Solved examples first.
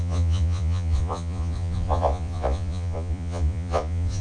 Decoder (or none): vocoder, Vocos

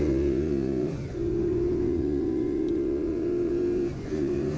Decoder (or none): vocoder, Vocos